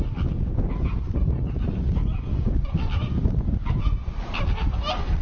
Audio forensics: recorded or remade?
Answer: recorded